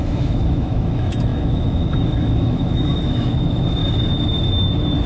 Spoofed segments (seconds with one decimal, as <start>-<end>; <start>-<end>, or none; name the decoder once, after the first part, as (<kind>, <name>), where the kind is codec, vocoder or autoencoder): 0.0-3.8 (autoencoder, DAC-VAE)